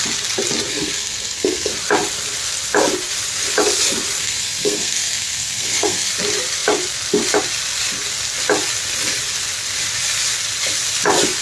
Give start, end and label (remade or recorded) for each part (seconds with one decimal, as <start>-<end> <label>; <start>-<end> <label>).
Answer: 0.0-0.7 recorded; 0.7-1.7 remade; 1.7-4.2 recorded; 4.2-6.1 remade; 6.1-11.4 recorded